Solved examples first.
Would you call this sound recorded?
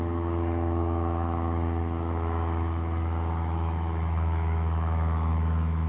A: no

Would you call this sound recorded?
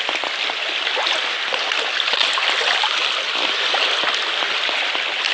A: yes